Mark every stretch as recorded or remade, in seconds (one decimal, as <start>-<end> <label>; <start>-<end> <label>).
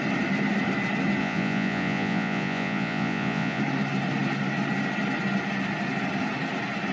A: 0.0-1.2 recorded; 1.2-3.6 remade; 3.6-6.9 recorded